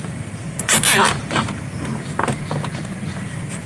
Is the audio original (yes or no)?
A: yes